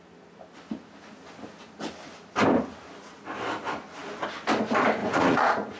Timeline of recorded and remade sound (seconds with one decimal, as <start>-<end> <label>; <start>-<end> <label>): 0.0-5.0 recorded; 5.0-5.8 remade